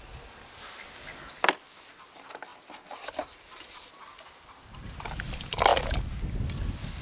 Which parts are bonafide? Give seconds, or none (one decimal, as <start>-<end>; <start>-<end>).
0.0-7.0